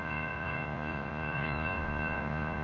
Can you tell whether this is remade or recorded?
remade